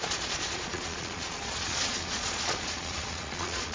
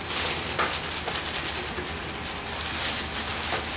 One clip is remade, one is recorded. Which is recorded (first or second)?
second